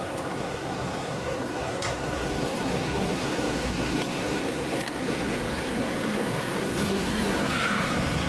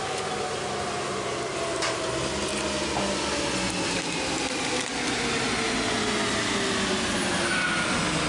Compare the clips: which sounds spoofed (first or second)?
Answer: first